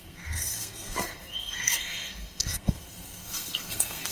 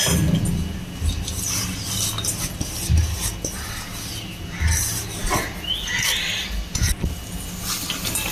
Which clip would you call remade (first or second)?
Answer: first